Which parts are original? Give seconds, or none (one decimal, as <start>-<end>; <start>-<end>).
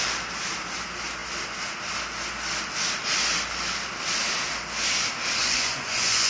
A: 0.0-5.4